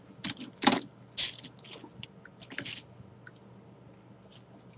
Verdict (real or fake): real